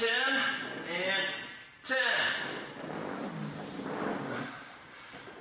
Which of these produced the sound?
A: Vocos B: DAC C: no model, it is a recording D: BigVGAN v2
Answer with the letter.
C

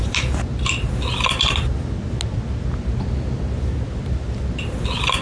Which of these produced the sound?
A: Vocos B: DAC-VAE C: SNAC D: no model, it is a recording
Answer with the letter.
D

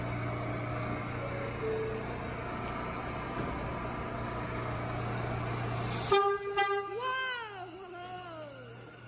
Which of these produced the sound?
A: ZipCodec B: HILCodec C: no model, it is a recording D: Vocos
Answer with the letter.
C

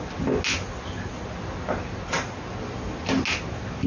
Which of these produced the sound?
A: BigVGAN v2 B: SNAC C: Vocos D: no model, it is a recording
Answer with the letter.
D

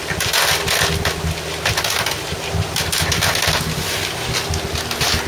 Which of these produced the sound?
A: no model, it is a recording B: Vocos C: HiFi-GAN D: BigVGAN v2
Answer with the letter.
A